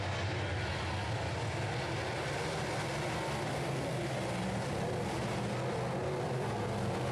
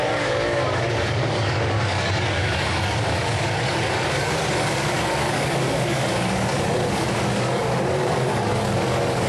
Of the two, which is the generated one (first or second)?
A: second